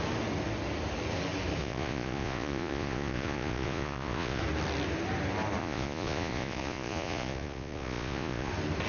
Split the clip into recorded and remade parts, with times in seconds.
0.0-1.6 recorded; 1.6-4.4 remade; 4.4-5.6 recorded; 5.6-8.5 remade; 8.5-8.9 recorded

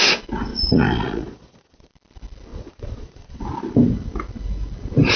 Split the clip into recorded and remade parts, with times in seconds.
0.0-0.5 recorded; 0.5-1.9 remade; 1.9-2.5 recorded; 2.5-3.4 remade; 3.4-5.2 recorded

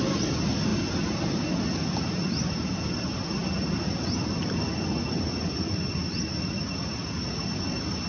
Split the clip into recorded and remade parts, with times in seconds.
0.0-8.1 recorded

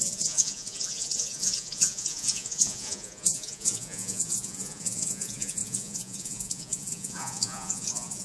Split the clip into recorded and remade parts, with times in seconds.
0.0-8.2 remade